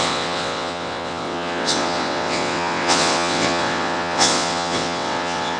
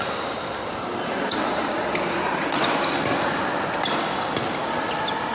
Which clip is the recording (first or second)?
second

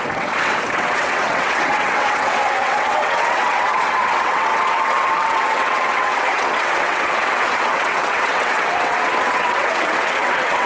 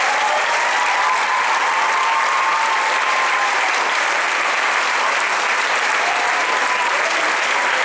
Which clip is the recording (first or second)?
second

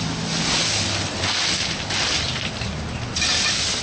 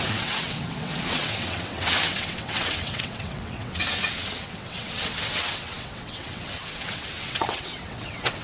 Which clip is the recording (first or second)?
first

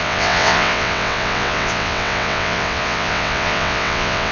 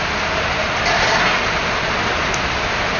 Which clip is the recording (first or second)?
second